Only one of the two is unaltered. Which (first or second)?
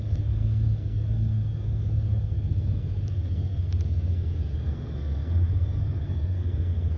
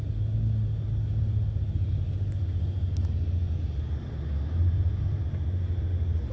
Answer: second